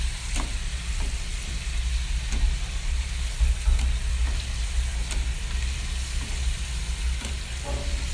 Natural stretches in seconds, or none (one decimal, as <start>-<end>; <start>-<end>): 0.0-8.1

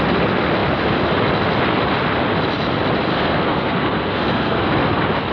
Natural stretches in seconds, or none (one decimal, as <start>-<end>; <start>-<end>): 0.0-3.1; 4.7-5.3

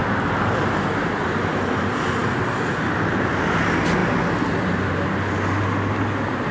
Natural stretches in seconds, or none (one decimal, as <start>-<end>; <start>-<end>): 0.0-6.5

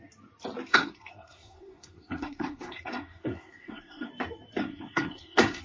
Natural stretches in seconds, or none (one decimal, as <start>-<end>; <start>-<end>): 0.0-0.7; 4.1-4.6